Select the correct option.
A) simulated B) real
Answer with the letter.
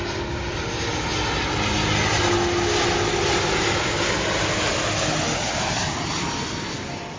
B